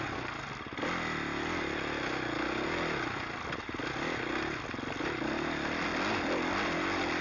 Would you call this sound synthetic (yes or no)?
no